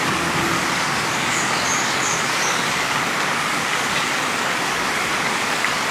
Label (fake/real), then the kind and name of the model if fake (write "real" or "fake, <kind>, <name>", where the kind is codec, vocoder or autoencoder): fake, codec, DAC